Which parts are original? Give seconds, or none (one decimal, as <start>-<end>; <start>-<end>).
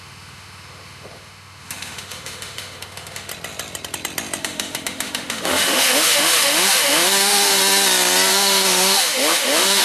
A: 3.3-4.4; 7.6-8.3